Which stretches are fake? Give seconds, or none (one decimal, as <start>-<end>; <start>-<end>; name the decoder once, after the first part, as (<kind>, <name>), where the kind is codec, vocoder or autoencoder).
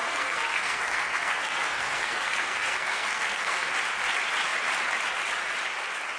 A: 0.0-3.7 (codec, SNAC)